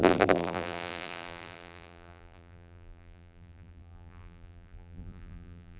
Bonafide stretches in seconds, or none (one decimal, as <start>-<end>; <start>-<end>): none